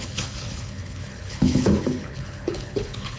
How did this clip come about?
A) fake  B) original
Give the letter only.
A